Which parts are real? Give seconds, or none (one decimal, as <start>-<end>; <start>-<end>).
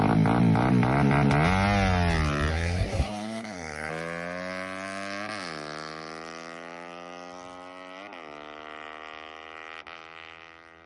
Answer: 0.0-2.5; 3.9-10.9